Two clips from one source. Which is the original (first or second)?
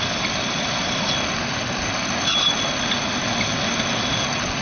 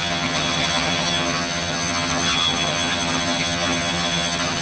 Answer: first